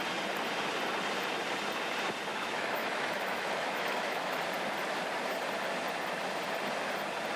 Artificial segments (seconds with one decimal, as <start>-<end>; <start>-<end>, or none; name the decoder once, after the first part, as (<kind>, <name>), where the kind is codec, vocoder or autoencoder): 2.3-4.4 (autoencoder, DAC-VAE)